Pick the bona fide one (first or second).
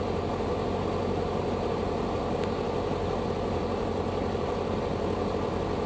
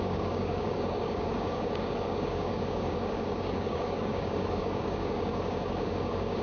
first